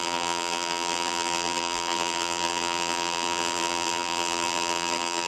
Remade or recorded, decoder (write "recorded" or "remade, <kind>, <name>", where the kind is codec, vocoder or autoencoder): remade, vocoder, BigVGAN v2